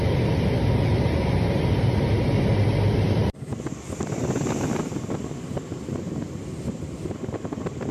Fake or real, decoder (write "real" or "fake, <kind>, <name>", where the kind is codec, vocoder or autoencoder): real